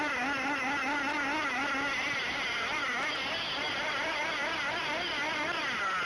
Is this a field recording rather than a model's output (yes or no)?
yes